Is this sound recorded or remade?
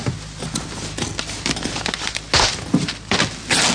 recorded